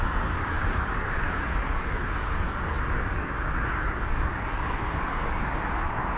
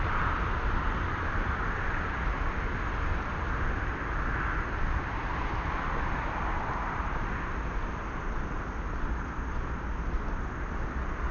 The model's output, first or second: first